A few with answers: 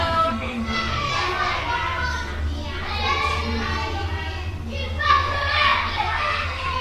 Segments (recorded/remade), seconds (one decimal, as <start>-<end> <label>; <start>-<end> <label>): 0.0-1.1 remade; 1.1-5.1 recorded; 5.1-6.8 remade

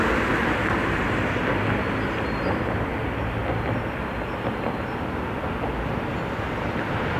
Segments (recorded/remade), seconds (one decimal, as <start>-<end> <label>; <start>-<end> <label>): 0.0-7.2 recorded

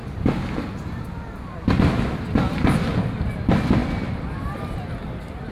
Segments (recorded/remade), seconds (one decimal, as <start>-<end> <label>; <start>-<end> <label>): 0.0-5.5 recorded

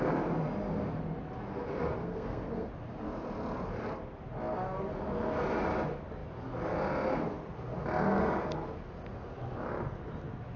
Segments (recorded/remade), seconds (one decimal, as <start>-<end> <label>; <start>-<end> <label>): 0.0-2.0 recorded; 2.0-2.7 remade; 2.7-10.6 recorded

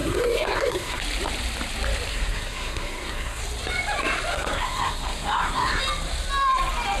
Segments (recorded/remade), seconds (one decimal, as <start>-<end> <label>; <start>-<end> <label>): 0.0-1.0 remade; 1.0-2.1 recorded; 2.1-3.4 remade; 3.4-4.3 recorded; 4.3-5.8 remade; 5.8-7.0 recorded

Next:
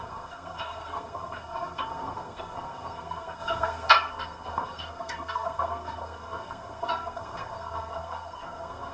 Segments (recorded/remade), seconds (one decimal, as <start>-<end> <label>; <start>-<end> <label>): 0.0-8.9 remade

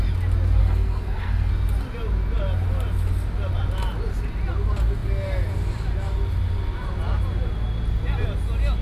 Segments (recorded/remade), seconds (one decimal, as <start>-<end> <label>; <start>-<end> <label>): 0.0-0.6 recorded; 0.6-1.5 remade; 1.5-8.8 recorded

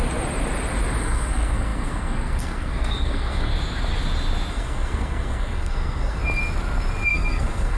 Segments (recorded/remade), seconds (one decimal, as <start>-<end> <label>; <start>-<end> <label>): 0.0-1.0 recorded; 1.0-3.5 remade; 3.5-4.5 recorded; 4.5-6.2 remade; 6.2-7.1 recorded; 7.1-7.8 remade